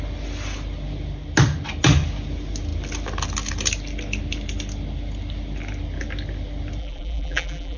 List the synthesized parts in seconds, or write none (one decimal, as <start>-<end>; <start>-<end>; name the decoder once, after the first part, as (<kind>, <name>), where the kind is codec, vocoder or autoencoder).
6.8-7.8 (vocoder, BigVGAN v2)